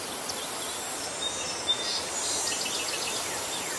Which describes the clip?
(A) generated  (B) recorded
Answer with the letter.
B